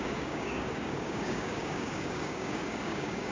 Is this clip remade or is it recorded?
remade